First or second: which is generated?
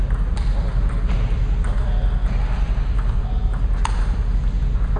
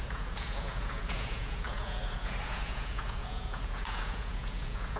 second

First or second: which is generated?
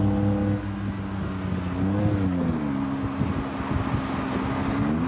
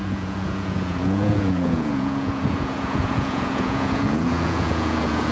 second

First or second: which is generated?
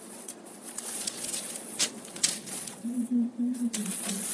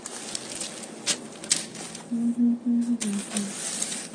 first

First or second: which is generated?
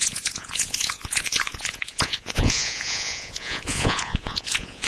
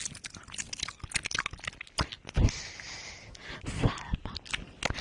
first